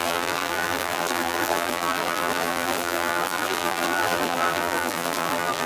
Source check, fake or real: fake